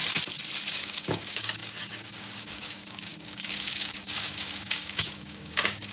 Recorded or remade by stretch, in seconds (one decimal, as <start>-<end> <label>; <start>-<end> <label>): 0.0-0.7 recorded; 0.7-5.9 remade